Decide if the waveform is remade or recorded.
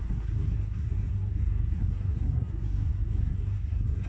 remade